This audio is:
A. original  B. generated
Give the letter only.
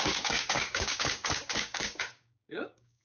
B